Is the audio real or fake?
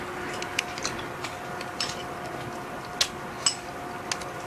real